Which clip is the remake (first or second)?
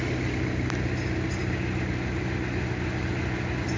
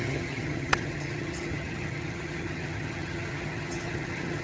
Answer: second